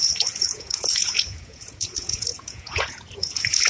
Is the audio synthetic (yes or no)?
yes